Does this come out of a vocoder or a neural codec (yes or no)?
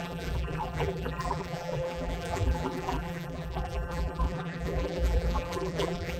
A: yes